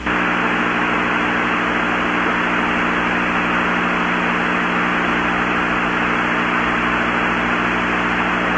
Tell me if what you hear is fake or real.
real